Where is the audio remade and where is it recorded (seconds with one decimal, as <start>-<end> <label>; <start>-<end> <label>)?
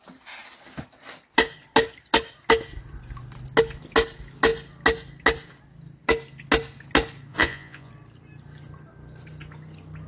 0.0-7.3 recorded; 7.3-7.9 remade; 7.9-10.1 recorded